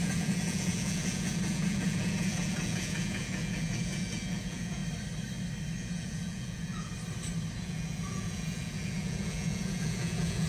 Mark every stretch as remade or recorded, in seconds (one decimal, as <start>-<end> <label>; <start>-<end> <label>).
0.0-4.8 remade; 4.8-5.8 recorded; 5.8-6.9 remade; 6.9-7.6 recorded; 7.6-10.5 remade